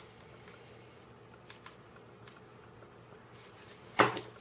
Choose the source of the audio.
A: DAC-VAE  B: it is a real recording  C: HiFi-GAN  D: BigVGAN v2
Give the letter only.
B